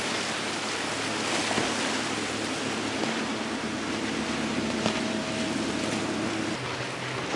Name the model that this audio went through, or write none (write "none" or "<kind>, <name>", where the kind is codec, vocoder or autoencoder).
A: none